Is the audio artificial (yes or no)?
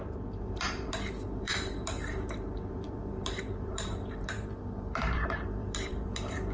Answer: yes